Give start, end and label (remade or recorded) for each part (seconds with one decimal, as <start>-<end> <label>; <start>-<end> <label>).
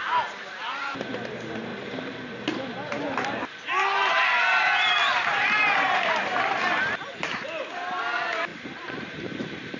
0.0-1.7 recorded; 1.7-2.3 remade; 2.3-5.0 recorded; 5.0-6.1 remade; 6.1-8.5 recorded; 8.5-9.8 remade